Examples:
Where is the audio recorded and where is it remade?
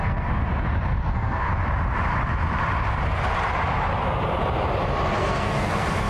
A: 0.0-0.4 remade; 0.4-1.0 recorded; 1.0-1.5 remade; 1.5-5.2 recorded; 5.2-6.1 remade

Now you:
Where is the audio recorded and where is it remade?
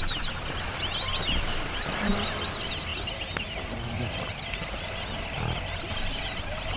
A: 0.0-6.8 recorded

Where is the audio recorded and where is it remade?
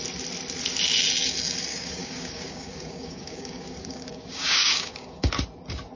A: 0.0-1.7 recorded; 1.7-5.3 remade; 5.3-6.0 recorded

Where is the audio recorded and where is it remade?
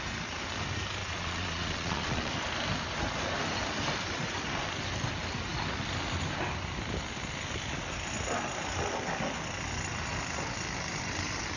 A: 0.0-1.0 recorded; 1.0-2.3 remade; 2.3-11.6 recorded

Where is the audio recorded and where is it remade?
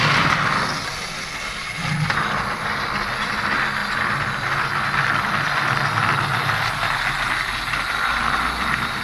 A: 0.0-9.0 recorded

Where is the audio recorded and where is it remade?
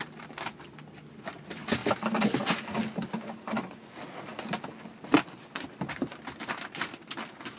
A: 0.0-7.6 recorded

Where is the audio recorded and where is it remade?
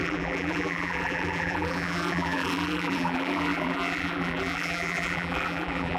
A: 0.0-6.0 remade